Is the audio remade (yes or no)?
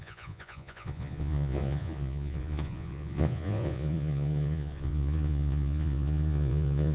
yes